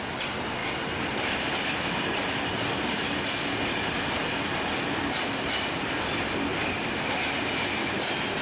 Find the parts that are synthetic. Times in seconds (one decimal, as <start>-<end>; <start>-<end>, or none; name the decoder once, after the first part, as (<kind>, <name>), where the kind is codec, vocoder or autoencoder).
none